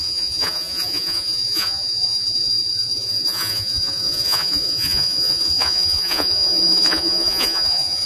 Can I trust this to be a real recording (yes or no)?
no